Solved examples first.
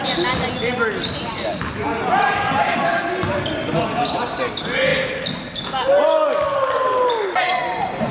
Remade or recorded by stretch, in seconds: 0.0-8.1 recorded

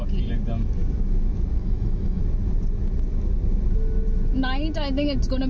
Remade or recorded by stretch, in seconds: 0.0-1.6 recorded; 1.6-2.2 remade; 2.2-5.5 recorded

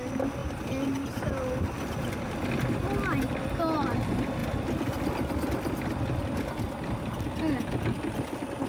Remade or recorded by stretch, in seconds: 0.0-8.7 recorded